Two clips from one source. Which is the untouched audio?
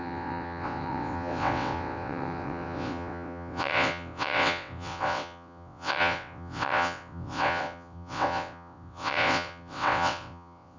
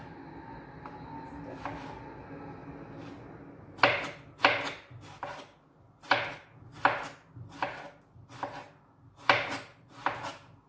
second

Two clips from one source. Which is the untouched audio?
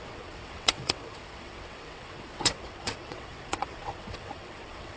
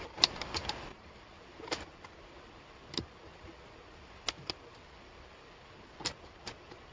second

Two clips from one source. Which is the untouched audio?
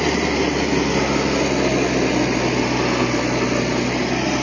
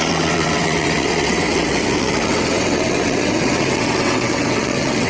first